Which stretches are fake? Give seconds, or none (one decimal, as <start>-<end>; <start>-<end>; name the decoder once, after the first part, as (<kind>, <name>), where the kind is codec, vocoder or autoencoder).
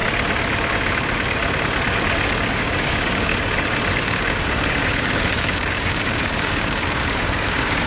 2.5-3.3 (codec, DAC); 4.0-7.9